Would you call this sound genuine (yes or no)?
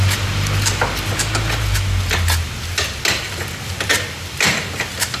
yes